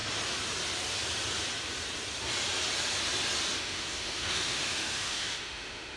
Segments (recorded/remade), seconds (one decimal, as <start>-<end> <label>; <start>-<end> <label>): 0.0-3.6 recorded; 3.6-6.0 remade